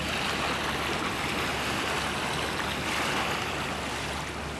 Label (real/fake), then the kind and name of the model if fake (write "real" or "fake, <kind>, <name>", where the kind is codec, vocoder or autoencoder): real